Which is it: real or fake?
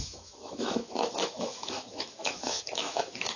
fake